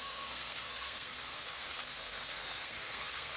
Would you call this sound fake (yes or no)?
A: yes